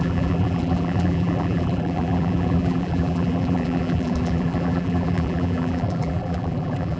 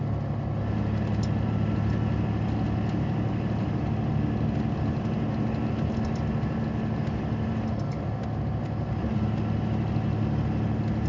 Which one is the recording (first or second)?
second